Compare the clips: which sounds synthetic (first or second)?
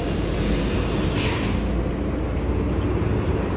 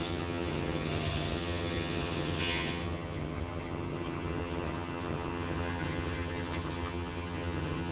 second